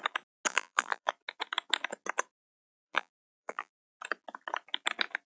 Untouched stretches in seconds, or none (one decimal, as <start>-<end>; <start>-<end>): 0.0-0.5; 1.1-2.7; 4.0-5.2